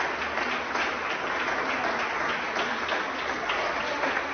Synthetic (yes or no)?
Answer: no